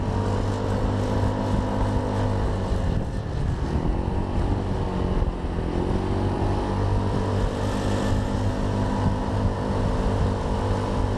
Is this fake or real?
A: real